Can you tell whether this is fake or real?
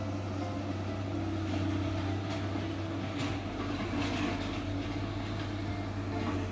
real